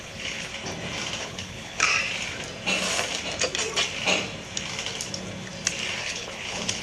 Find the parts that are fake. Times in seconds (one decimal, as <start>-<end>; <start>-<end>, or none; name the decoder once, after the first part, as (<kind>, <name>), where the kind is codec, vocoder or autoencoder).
0.0-0.5 (codec, HILCodec); 1.2-1.9; 6.0-6.8